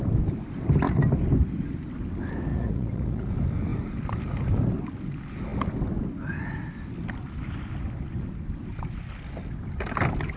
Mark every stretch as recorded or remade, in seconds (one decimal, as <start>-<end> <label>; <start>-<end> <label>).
0.0-2.5 recorded; 2.5-3.3 remade; 3.3-10.4 recorded